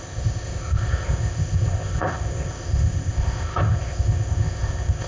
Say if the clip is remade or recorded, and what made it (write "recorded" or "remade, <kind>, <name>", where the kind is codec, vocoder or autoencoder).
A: remade, codec, ZipCodec